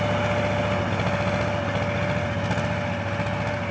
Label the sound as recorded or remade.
recorded